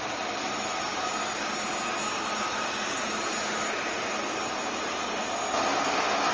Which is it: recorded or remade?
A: recorded